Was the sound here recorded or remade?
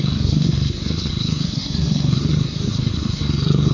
remade